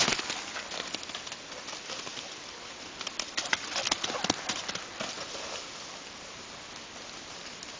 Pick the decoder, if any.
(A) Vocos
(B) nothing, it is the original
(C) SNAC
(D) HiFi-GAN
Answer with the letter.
B